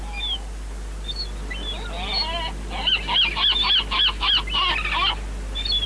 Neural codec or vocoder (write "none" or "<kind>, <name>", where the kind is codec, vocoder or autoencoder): none